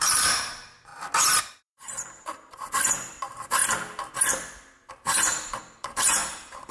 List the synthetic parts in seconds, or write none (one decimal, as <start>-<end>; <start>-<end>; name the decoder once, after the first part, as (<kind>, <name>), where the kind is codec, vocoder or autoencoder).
0.0-0.9 (vocoder, BigVGAN v2); 1.4-3.6; 4.9-6.7